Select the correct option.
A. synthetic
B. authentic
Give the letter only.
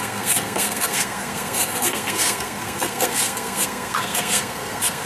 A